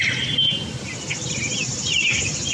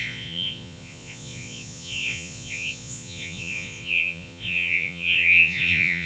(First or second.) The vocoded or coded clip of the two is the second